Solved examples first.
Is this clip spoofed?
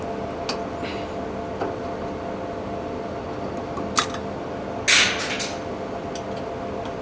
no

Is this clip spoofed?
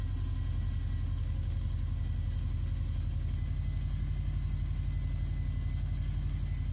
no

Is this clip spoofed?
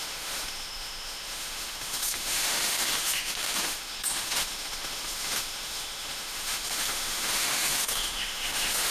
yes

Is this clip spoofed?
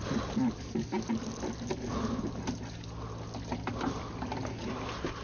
no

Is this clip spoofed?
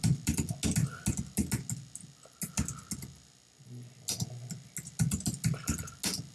no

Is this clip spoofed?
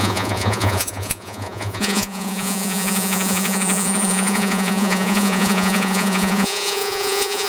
yes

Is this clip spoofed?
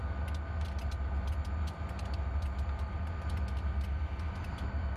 no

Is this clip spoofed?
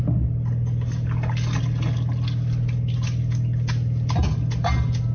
no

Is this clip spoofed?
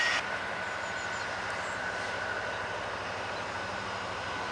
no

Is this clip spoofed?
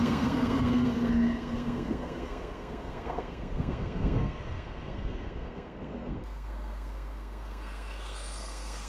yes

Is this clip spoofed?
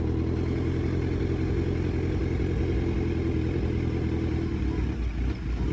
no